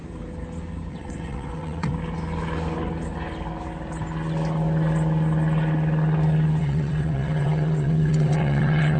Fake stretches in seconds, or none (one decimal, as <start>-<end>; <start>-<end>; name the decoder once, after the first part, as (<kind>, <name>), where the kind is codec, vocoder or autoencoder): 0.9-1.9 (vocoder, WaveNeXt); 6.6-9.0